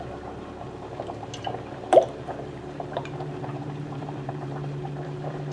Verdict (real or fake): fake